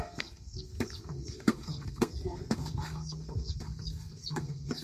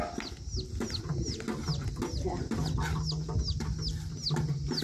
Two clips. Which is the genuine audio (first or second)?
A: second